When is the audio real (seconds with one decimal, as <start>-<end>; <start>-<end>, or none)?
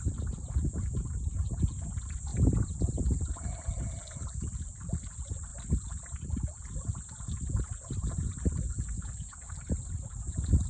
0.0-2.3; 3.3-5.5; 8.1-10.7